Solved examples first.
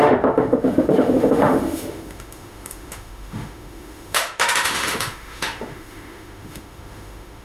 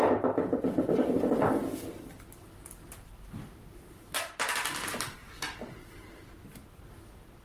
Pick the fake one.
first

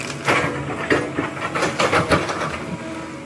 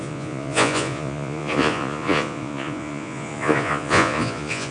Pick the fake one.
second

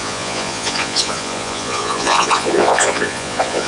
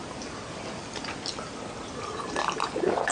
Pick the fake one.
first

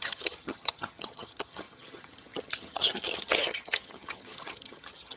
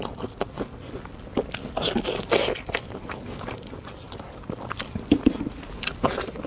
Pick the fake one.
first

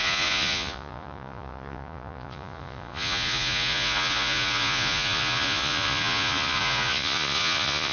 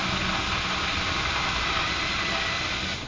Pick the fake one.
first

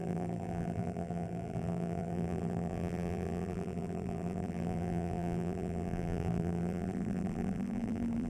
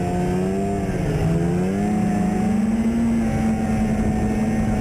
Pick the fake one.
first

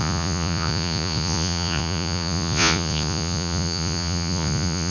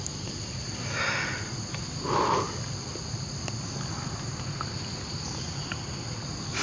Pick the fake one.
first